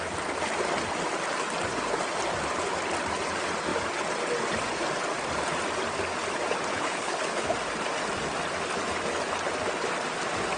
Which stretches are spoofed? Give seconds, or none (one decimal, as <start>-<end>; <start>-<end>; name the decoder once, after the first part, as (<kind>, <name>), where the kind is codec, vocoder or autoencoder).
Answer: 6.7-7.4 (codec, HILCodec)